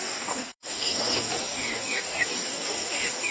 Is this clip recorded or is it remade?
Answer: remade